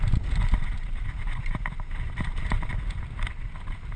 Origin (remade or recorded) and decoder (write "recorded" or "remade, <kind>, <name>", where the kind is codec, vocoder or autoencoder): recorded